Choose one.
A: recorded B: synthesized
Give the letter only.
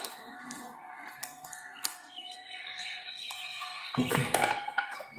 B